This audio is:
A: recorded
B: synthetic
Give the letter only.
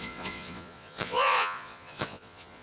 B